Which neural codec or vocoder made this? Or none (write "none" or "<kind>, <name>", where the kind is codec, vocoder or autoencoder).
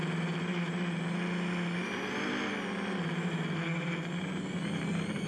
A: none